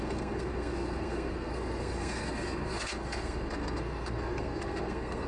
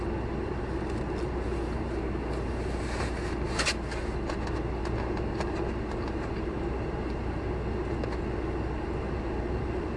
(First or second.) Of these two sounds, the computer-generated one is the first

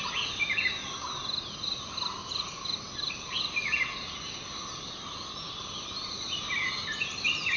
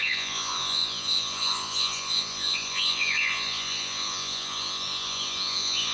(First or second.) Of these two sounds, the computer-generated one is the second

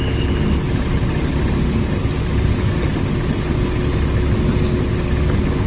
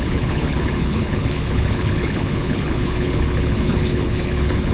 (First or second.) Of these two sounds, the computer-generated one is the second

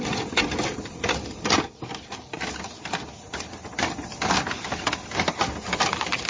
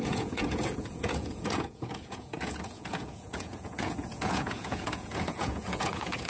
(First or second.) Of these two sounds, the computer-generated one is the second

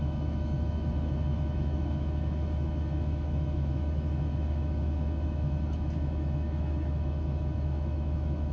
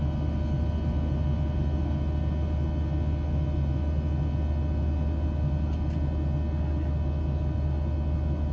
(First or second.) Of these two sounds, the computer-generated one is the first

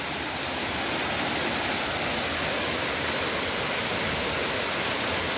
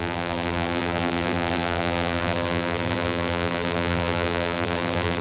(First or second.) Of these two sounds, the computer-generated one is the second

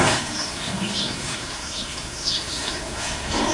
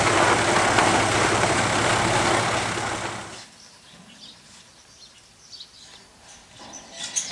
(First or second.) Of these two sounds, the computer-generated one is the first